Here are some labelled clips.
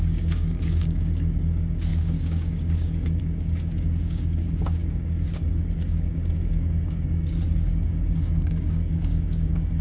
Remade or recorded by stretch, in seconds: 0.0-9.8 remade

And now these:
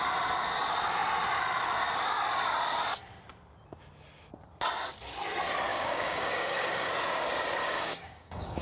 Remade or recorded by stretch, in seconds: 0.0-5.7 recorded; 5.7-6.9 remade; 6.9-7.6 recorded; 7.6-8.6 remade

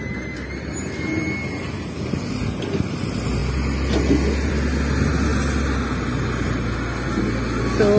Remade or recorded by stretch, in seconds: 0.0-8.0 recorded

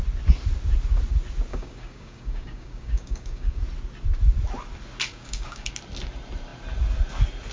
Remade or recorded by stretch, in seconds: 0.0-1.5 recorded; 1.5-3.6 remade; 3.6-5.1 recorded; 5.1-5.7 remade; 5.7-7.5 recorded

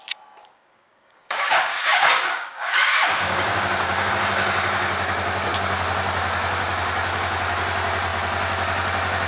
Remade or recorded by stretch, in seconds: 0.0-0.4 recorded; 0.4-4.1 remade; 4.1-9.3 recorded

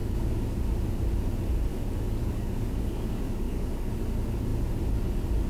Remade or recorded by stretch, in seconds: 0.0-0.6 remade; 0.6-1.7 recorded; 1.7-3.9 remade; 3.9-5.5 recorded

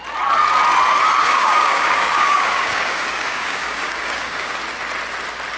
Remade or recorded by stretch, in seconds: 0.0-1.2 recorded; 1.2-4.6 remade; 4.6-5.6 recorded

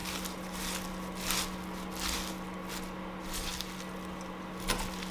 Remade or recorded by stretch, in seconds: 0.0-5.1 recorded